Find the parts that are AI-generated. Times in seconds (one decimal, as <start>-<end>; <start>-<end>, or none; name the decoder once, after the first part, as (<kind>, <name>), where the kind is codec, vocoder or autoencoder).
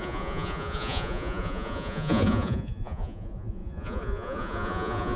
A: 0.0-5.2 (vocoder, Vocos)